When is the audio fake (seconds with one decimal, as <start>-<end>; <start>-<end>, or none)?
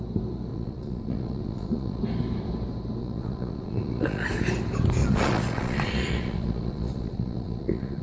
0.5-2.0; 3.0-4.3; 5.0-8.0